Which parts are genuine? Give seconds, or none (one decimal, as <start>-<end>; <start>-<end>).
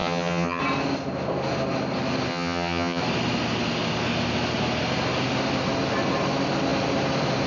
0.6-2.3; 3.0-7.5